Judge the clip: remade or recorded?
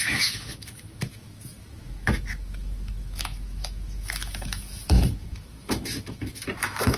remade